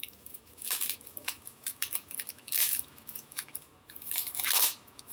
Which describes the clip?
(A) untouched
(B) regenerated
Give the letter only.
B